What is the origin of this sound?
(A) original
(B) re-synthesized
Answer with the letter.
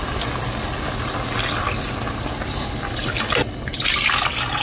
A